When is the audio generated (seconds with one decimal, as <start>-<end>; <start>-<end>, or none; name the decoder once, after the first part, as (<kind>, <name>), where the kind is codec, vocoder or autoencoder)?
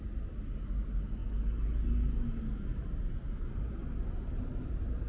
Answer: none